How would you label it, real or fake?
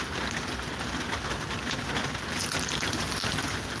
real